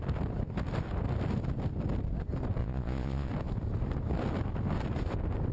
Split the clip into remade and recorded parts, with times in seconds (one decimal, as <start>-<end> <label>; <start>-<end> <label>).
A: 0.0-2.6 recorded; 2.6-3.3 remade; 3.3-5.5 recorded